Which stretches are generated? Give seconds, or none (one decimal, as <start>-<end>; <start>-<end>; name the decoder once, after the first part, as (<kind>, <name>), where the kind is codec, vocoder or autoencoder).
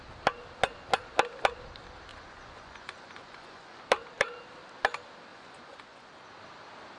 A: 2.1-3.8 (vocoder, Vocos); 5.3-6.1